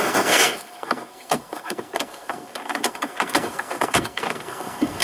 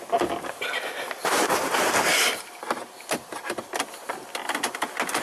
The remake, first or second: first